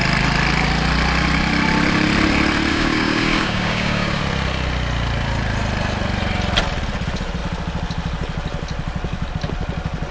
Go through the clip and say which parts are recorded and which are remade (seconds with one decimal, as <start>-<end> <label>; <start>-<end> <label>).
0.0-2.7 recorded; 2.7-4.2 remade; 4.2-10.1 recorded